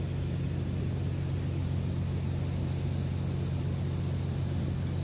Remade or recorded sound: recorded